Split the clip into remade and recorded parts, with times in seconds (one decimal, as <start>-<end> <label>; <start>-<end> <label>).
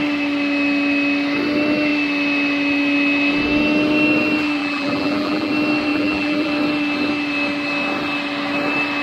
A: 0.0-4.6 recorded; 4.6-5.5 remade; 5.5-5.9 recorded; 5.9-6.5 remade; 6.5-9.0 recorded